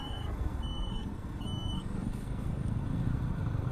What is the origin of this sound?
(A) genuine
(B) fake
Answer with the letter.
B